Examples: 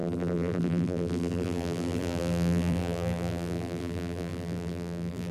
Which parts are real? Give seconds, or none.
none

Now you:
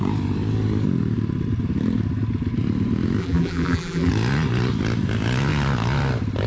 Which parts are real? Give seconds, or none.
0.0-3.2; 4.1-6.5

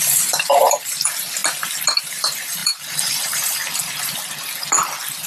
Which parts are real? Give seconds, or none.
1.4-2.0; 3.6-5.3

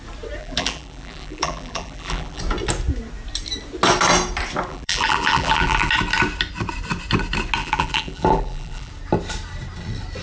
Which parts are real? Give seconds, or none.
0.0-0.4; 2.4-4.7; 5.9-7.6; 8.9-10.2

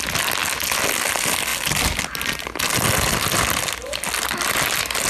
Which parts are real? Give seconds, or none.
0.0-5.1

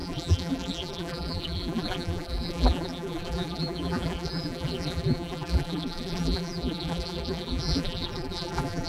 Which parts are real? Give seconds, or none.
none